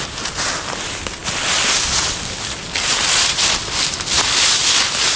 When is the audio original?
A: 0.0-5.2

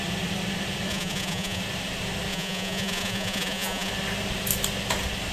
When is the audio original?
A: 0.0-0.9; 1.6-2.3; 3.9-5.3

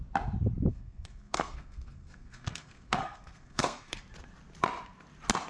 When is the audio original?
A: 0.0-0.7; 4.0-5.5

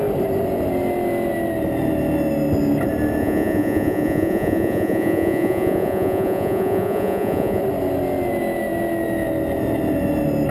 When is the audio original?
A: 0.0-3.2; 7.6-10.5

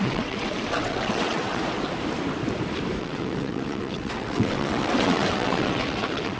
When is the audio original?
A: 1.6-3.0

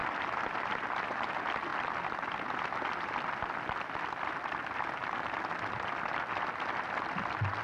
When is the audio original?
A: 0.0-7.6

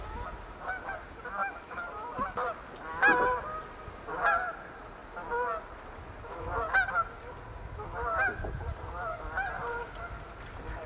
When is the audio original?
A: 0.0-1.4; 2.6-10.9